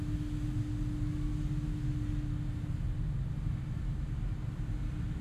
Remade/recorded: recorded